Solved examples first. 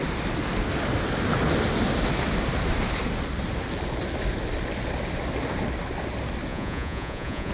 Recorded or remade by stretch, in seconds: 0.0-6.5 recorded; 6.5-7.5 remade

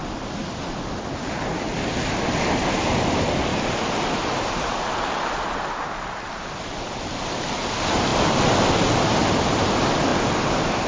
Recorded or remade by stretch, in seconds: 0.0-10.9 recorded